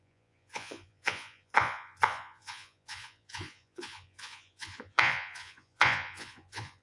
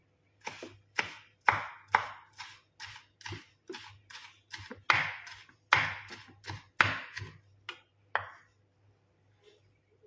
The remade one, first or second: first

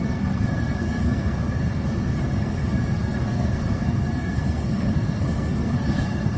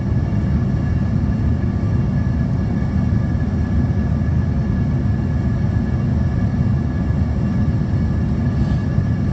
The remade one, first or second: first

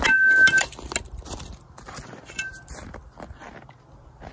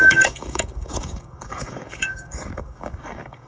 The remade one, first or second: second